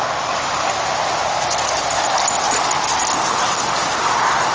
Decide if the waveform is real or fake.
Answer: real